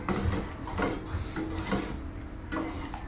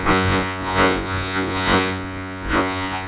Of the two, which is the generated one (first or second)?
second